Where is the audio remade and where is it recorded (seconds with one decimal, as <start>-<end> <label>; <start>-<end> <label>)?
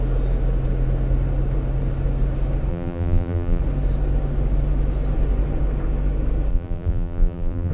0.0-2.7 recorded; 2.7-3.6 remade; 3.6-6.5 recorded; 6.5-7.7 remade